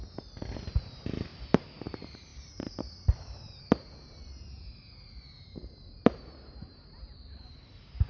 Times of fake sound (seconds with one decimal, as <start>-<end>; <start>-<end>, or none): 0.8-1.3; 1.9-8.1

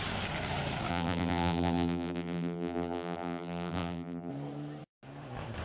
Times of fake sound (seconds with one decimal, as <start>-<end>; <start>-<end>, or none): 0.9-4.3

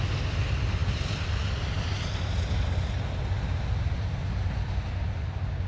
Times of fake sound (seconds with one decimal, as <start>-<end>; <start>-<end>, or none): none